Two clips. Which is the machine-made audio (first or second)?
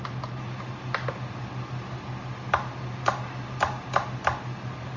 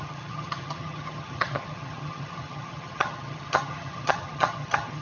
second